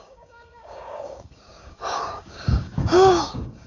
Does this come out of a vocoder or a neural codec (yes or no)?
yes